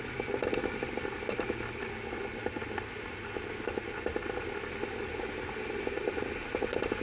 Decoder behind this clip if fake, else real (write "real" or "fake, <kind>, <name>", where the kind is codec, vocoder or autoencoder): real